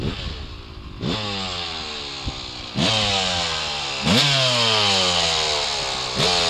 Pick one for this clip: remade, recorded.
recorded